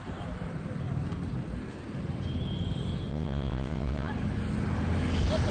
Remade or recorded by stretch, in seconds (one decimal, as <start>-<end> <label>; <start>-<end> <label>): 0.0-3.1 recorded; 3.1-4.1 remade; 4.1-5.5 recorded